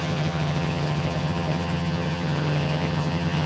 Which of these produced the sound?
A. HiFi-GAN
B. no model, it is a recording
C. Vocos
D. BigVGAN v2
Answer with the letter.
A